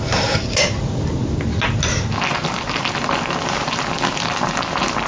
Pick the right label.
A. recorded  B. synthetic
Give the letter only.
A